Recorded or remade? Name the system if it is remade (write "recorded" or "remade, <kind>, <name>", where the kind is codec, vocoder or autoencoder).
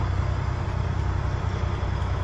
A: recorded